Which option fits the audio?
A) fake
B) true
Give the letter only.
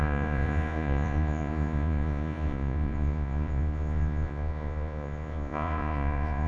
A